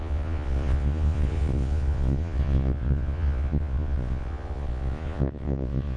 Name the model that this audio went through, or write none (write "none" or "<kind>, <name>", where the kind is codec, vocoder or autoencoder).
vocoder, Vocos